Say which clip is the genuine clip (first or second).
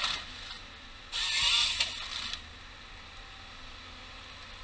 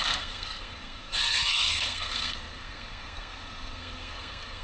first